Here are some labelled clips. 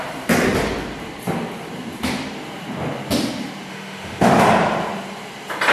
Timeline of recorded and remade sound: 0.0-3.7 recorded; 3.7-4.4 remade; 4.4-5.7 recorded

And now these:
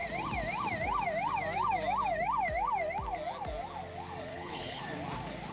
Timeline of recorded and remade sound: 0.0-4.3 recorded; 4.3-4.8 remade; 4.8-5.5 recorded

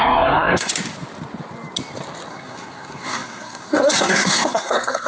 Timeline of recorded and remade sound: 0.0-0.7 remade; 0.7-2.3 recorded; 2.3-5.1 remade

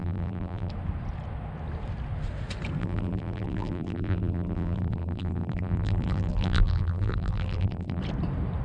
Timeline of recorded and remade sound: 0.0-0.7 remade; 0.7-2.8 recorded; 2.8-8.0 remade; 8.0-8.6 recorded

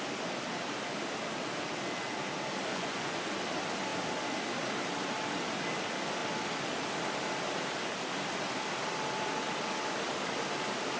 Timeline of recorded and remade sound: 0.0-2.7 recorded; 2.7-3.2 remade; 3.2-11.0 recorded

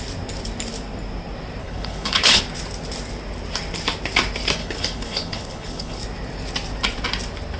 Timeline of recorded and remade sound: 0.0-1.6 recorded; 1.6-2.4 remade; 2.4-4.6 recorded; 4.6-6.0 remade; 6.0-7.6 recorded